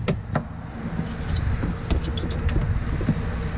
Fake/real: real